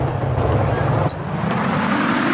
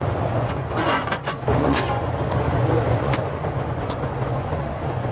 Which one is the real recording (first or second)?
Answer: first